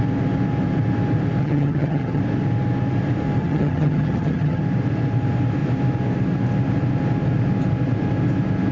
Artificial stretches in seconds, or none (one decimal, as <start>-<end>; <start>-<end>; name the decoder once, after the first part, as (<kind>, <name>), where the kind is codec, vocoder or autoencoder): 1.4-2.2 (vocoder, HiFi-GAN); 3.4-4.6